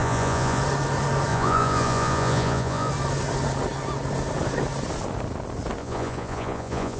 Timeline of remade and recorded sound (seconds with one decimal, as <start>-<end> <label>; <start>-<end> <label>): 0.0-0.6 remade; 0.6-1.3 recorded; 1.3-2.9 remade; 2.9-5.8 recorded; 5.8-7.0 remade